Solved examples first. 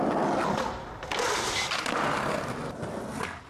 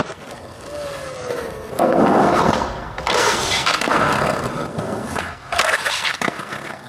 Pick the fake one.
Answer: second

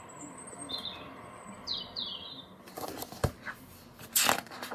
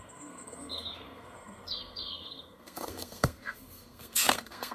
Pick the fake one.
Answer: second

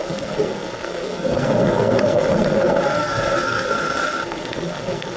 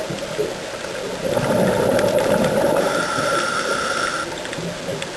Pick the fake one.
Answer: first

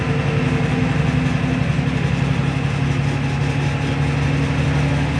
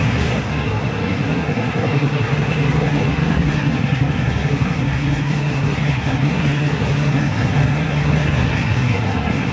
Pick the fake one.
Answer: second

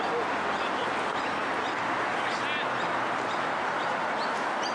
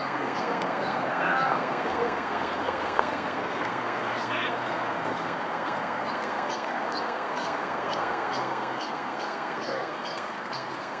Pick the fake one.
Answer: second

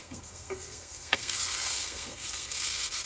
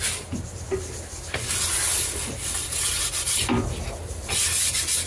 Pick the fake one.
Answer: first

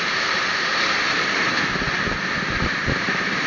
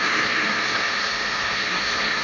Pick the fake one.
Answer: second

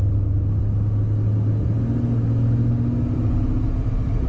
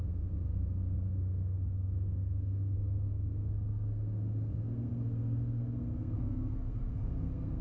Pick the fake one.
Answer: second